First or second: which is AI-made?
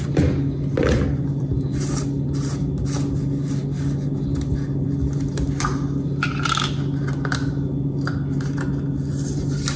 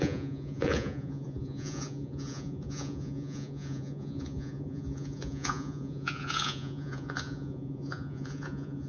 second